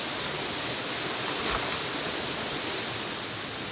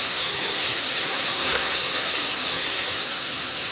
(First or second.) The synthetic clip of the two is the second